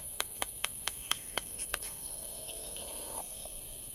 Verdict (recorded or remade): remade